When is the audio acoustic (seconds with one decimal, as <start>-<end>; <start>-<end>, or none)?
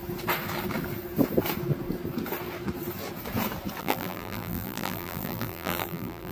0.0-3.8